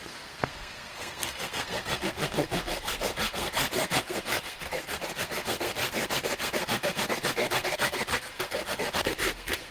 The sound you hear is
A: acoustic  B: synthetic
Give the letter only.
B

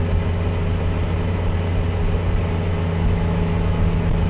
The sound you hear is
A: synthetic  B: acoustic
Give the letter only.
B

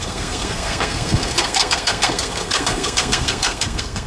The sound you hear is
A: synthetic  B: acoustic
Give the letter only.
A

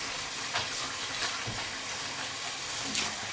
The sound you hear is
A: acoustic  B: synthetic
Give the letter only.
A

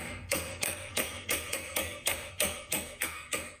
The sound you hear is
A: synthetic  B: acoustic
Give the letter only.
A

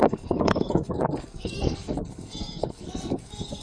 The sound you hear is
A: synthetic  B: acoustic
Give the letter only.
A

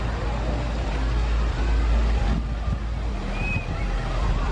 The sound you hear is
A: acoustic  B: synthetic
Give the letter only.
A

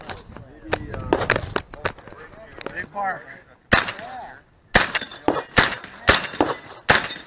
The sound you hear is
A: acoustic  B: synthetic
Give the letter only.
A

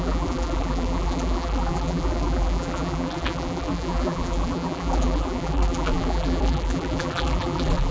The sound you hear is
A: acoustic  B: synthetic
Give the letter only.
B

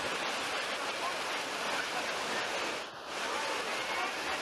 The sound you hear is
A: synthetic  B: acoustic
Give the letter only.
B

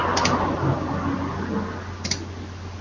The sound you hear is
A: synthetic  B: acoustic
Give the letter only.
B